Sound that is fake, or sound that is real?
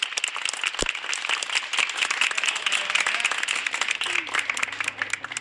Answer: real